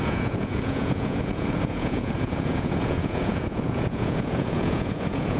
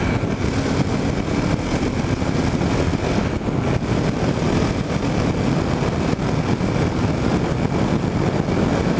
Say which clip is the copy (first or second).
first